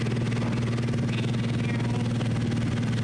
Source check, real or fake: real